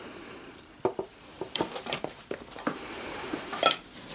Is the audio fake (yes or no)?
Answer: yes